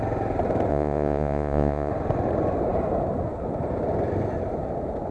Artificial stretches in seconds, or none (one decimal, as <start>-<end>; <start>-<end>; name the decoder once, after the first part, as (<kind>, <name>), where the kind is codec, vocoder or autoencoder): 0.7-1.9 (vocoder, Vocos)